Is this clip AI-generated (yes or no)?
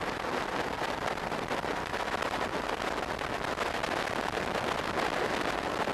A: no